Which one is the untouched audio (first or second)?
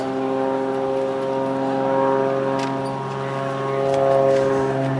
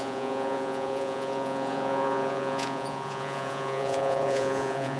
first